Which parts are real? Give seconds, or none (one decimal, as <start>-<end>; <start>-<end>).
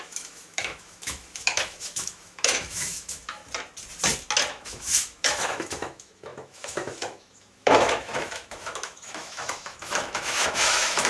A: 3.4-4.5